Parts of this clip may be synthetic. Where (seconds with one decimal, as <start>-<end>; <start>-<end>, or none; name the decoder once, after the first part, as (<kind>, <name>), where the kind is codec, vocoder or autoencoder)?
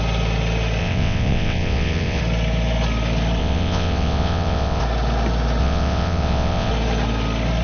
0.8-2.2 (vocoder, WaveNeXt); 3.4-4.8; 5.6-6.7